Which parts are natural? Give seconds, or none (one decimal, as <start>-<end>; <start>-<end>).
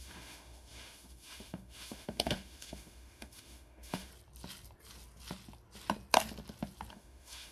4.1-6.9